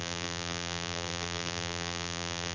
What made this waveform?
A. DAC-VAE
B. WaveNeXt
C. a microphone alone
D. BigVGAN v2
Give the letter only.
D